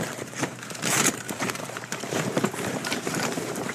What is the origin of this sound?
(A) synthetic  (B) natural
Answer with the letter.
A